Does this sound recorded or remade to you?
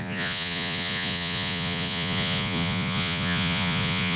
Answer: remade